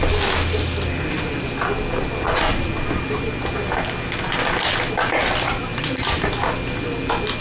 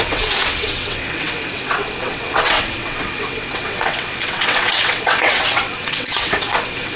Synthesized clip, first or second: second